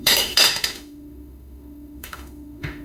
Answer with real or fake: fake